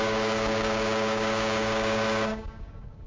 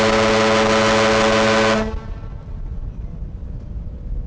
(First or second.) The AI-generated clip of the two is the first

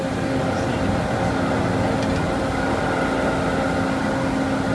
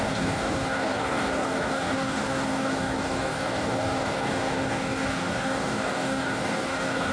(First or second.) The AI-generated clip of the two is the second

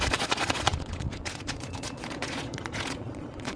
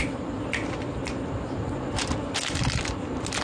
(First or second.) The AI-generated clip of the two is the first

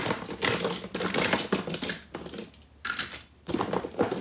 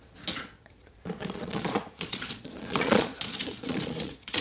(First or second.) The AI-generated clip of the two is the second